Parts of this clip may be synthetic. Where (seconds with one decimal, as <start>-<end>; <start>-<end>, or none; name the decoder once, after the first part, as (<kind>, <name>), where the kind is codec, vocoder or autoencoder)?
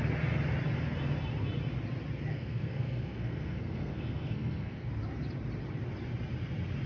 2.3-4.9 (codec, SNAC)